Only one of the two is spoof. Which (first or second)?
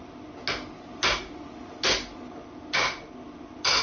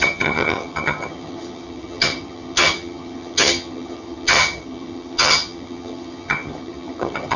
second